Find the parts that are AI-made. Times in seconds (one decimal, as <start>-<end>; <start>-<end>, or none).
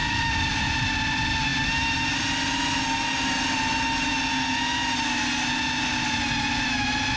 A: none